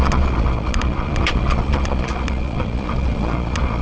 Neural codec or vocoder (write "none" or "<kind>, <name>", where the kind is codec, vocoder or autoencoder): vocoder, Vocos